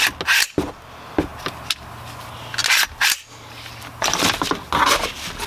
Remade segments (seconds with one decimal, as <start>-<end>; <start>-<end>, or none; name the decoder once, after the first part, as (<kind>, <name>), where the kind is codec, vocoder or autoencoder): none